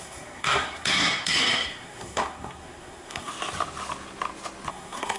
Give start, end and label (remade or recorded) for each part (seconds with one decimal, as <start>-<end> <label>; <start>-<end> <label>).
0.0-3.3 remade; 3.3-4.7 recorded; 4.7-5.2 remade